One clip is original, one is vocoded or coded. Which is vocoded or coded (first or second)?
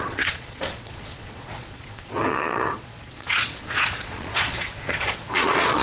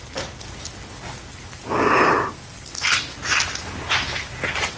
first